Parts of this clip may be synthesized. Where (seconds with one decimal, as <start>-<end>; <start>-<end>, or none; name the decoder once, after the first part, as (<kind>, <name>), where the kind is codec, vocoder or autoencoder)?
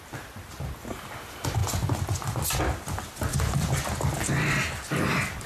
none